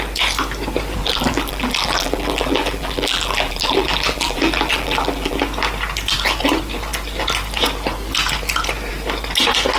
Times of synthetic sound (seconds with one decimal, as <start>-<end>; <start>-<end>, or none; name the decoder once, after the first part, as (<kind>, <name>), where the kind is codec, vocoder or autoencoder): 1.0-5.4 (vocoder, BigVGAN v2)